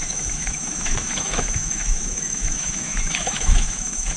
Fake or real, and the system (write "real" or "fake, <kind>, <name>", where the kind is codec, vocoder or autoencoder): fake, autoencoder, DAC-VAE